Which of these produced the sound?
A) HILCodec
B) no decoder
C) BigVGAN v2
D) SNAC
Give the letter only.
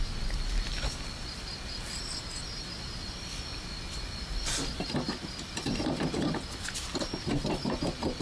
C